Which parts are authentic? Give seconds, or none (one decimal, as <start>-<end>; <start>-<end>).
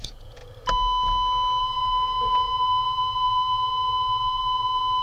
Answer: 0.4-1.6